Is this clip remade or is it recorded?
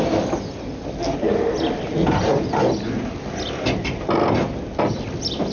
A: recorded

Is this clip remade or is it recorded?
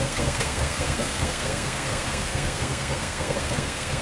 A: remade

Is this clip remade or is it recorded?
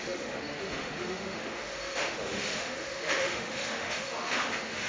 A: remade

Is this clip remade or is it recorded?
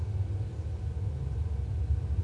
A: recorded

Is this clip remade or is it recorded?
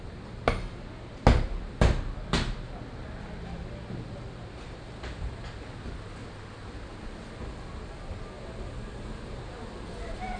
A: recorded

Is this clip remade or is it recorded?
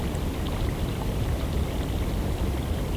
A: recorded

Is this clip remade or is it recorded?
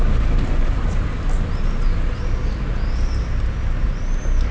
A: recorded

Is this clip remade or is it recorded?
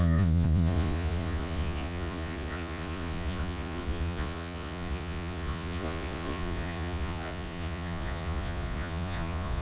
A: remade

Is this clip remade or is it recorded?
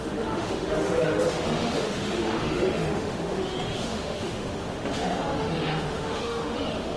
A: remade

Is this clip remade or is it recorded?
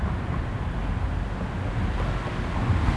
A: recorded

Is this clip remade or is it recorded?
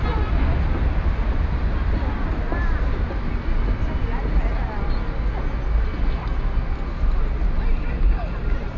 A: recorded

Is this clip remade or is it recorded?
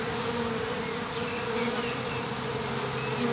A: recorded